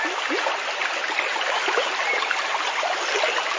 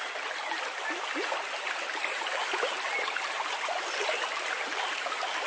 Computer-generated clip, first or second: first